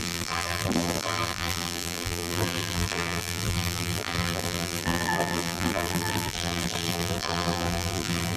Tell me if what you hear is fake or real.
fake